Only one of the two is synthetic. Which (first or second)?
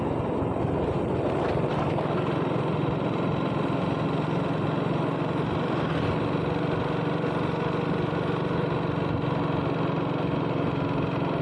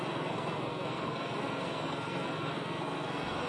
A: second